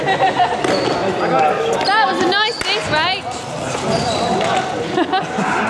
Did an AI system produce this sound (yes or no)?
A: no